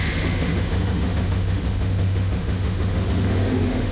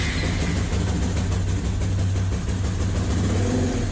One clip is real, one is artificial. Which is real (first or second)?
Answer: second